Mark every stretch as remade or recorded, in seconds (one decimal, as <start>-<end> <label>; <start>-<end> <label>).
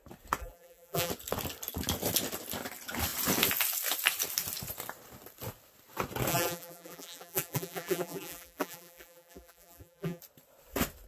0.0-0.4 recorded; 0.4-1.1 remade; 1.1-6.3 recorded; 6.3-10.2 remade; 10.2-11.1 recorded